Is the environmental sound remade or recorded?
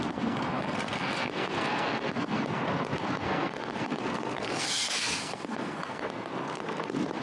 remade